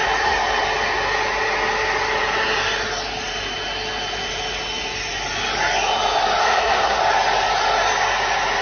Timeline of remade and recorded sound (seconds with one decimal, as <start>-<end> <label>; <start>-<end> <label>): 0.0-6.4 recorded; 6.4-7.0 remade; 7.0-8.6 recorded

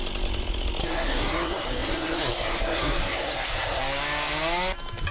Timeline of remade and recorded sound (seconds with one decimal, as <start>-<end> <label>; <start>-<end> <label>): 0.0-0.8 recorded; 0.8-3.8 remade; 3.8-5.1 recorded